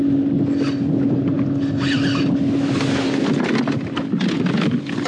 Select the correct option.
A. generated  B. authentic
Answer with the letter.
B